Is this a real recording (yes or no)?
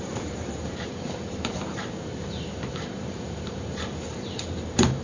no